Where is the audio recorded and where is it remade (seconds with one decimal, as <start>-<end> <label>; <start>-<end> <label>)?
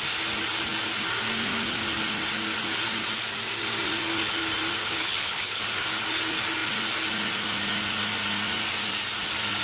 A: 0.0-4.8 recorded; 4.8-5.6 remade; 5.6-9.6 recorded